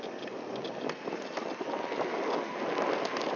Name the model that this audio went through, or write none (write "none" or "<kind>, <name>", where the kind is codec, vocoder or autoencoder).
none